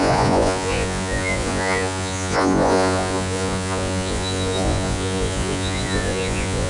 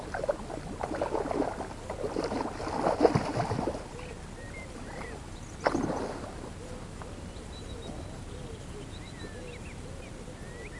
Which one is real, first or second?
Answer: second